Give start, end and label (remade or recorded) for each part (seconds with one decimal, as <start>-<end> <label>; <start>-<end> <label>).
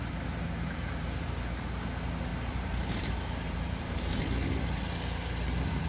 0.0-2.3 recorded; 2.3-4.2 remade; 4.2-5.9 recorded